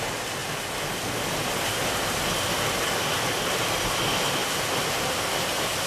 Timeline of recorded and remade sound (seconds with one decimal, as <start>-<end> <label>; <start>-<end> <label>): 0.0-5.9 recorded